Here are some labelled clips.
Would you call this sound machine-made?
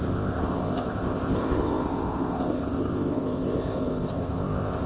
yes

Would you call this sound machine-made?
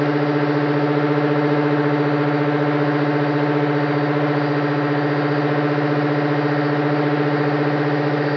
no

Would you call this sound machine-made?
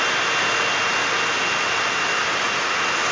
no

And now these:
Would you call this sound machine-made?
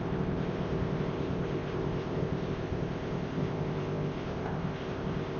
yes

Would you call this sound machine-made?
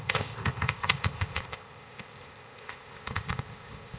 yes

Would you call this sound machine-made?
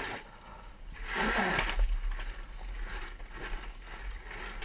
no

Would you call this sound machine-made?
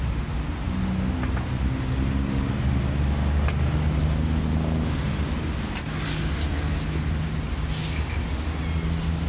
no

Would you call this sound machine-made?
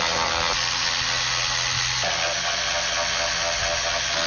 no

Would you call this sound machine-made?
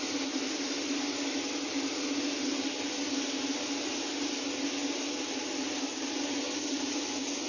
no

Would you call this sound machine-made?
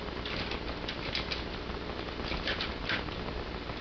no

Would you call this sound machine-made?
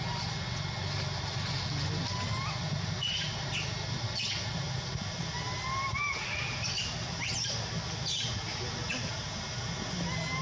no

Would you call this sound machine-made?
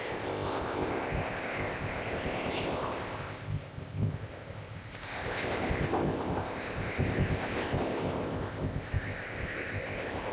yes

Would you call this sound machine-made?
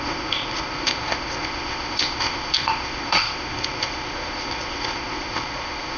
yes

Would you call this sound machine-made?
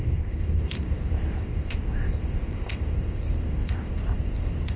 yes